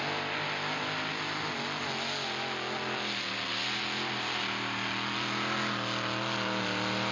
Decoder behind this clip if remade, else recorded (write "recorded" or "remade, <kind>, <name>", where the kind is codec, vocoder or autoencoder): recorded